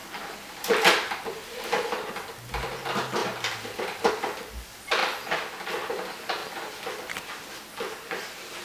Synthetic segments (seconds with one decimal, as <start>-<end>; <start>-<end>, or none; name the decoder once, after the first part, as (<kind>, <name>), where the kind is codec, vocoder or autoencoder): 3.2-4.1 (vocoder, BigVGAN v2); 5.0-5.6; 6.4-7.3